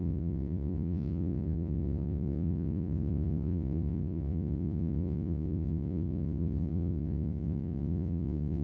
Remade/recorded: remade